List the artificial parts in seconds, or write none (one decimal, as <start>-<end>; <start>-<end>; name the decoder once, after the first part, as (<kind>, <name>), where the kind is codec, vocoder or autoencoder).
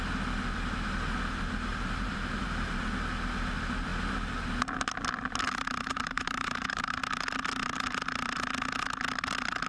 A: 1.7-2.8 (vocoder, BigVGAN v2); 5.9-7.0